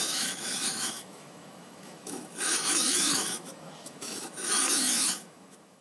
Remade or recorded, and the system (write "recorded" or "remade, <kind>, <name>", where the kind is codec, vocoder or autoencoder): remade, autoencoder, DAC-VAE